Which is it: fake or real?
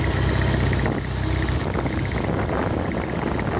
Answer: real